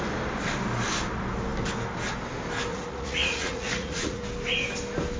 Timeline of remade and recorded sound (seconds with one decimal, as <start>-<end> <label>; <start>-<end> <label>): 0.0-2.7 recorded; 2.7-4.2 remade; 4.2-5.2 recorded